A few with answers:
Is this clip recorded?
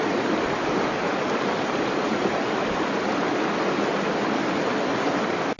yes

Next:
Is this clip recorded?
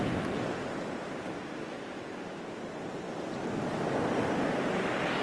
yes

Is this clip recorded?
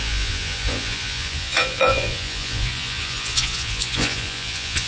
no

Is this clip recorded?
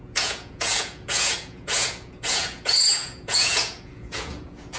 no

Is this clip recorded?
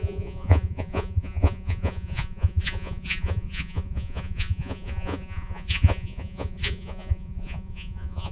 no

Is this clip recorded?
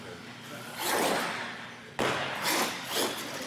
yes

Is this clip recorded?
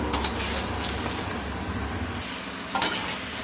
yes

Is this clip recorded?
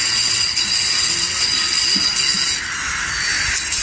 yes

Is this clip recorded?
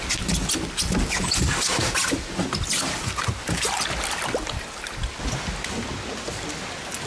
yes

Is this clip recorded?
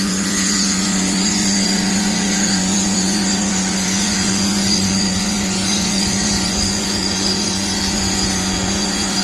no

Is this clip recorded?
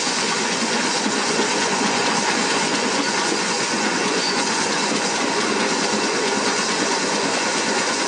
no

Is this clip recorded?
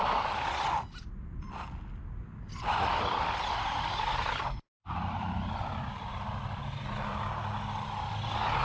yes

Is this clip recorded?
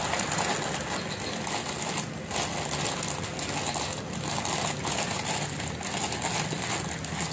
yes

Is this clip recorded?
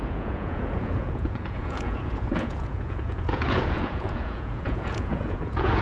no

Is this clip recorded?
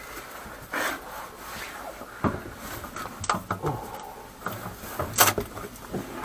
yes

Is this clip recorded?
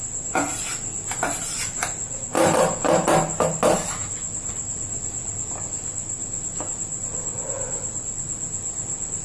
yes